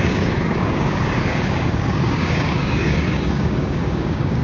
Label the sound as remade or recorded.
remade